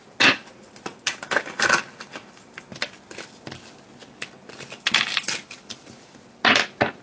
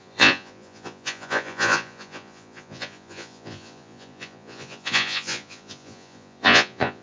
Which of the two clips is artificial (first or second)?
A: second